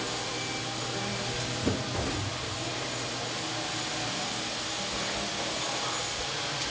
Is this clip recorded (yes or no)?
yes